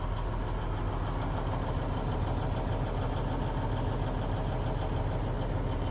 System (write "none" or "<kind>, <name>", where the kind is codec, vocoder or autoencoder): none